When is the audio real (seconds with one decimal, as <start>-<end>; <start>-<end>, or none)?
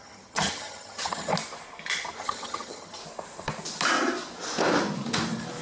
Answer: 1.3-2.2; 3.0-5.6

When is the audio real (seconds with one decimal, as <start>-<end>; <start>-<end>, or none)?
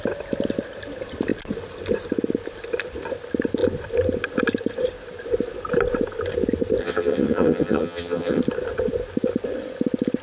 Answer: 0.0-6.8; 8.4-10.2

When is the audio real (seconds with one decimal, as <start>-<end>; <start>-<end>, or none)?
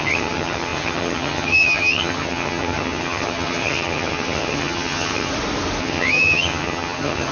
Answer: 5.3-5.8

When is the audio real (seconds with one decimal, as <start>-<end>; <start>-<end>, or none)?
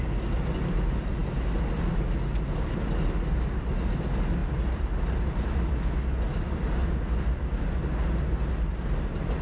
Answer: 0.0-9.4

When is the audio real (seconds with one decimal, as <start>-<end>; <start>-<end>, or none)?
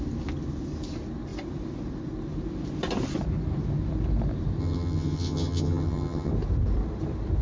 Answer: 0.0-4.6; 6.3-7.4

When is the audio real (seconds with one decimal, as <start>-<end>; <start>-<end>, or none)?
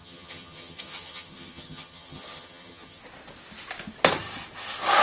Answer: 3.0-5.0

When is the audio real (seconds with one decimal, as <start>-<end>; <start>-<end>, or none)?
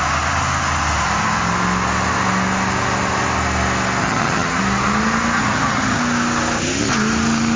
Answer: 0.0-4.0; 4.6-5.4; 6.0-7.6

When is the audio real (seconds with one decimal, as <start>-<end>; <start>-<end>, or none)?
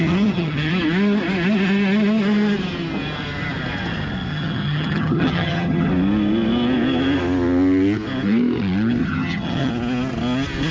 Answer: 0.7-4.3; 5.9-9.0; 9.7-10.7